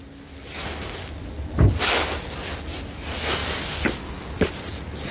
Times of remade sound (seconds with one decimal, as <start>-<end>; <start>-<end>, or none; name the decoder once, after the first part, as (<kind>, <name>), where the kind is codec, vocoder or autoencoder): 0.4-1.4 (vocoder, BigVGAN v2); 3.4-4.1